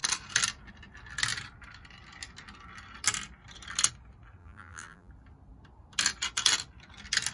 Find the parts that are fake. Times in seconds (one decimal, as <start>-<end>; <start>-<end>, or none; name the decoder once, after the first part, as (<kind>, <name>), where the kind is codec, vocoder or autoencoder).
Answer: 4.4-5.1 (vocoder, BigVGAN v2)